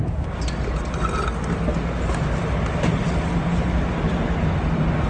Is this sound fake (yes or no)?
no